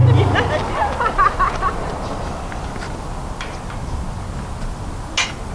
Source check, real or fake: real